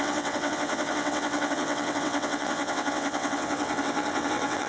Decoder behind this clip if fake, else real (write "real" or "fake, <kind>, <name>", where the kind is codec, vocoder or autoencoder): fake, vocoder, WaveNeXt